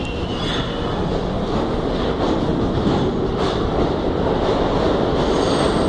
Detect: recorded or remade recorded